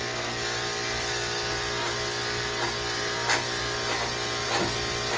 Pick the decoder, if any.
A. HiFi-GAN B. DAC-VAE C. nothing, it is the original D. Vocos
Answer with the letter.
C